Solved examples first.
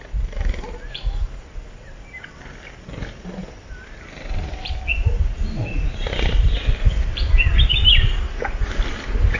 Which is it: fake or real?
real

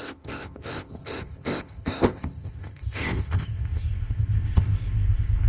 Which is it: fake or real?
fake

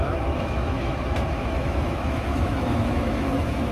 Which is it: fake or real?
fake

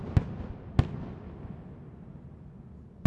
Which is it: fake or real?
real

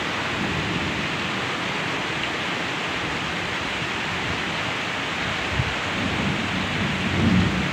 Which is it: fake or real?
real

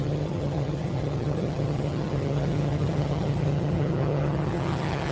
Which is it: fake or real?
fake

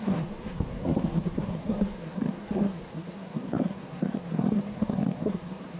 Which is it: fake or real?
fake